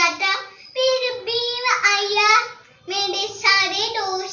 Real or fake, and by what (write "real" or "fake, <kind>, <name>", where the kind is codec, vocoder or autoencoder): real